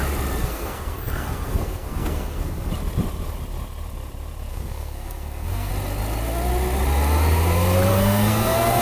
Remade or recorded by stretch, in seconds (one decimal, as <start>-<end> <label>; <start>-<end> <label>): 0.0-0.4 recorded; 0.4-2.7 remade; 2.7-4.5 recorded; 4.5-5.7 remade; 5.7-7.9 recorded; 7.9-8.8 remade